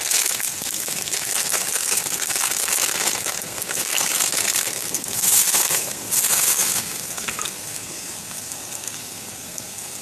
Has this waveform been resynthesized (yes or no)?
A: yes